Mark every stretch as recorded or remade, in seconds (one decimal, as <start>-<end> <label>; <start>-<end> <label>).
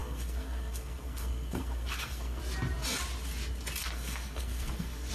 0.0-2.4 remade; 2.4-3.8 recorded; 3.8-5.1 remade